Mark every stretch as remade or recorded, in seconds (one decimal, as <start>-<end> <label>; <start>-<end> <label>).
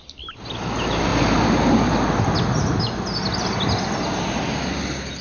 0.0-5.2 recorded